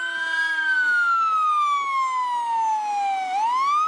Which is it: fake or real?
real